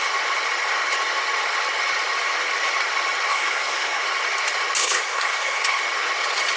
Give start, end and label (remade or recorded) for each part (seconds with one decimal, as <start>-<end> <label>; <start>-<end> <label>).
0.0-3.3 recorded; 3.3-4.0 remade; 4.0-4.8 recorded; 4.8-5.8 remade; 5.8-6.6 recorded